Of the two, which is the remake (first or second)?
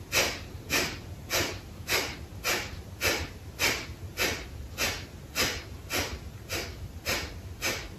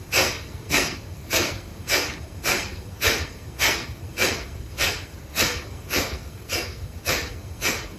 second